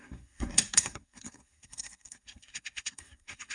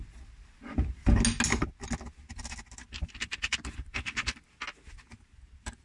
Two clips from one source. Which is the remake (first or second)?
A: first